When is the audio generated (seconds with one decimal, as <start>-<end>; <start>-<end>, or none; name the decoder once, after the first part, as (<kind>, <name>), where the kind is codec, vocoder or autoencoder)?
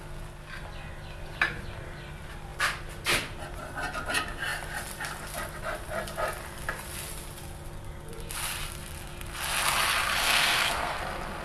10.2-11.0 (codec, SNAC)